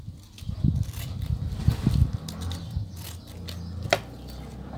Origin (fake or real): real